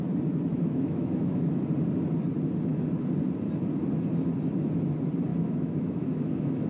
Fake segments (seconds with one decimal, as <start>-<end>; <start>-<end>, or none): 0.5-1.5; 5.3-6.7